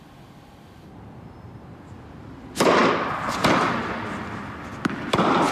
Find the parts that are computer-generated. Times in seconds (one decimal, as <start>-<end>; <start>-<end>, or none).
none